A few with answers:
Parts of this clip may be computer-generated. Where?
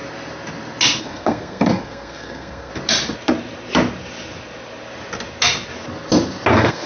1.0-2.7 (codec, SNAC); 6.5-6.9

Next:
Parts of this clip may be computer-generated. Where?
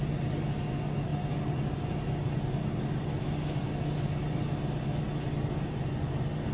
none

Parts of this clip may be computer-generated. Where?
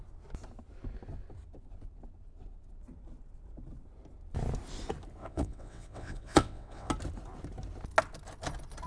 5.2-6.9 (vocoder, WaveNeXt)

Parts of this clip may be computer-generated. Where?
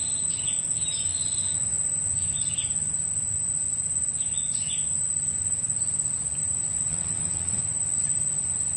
6.9-7.6 (vocoder, WaveNeXt)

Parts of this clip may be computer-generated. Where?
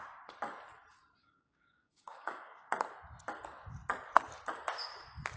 1.2-2.7 (codec, DAC)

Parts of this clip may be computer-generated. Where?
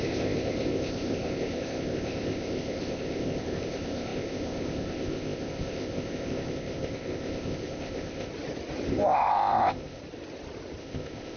0.0-8.3 (codec, ZipCodec); 8.9-10.0; 10.8-11.4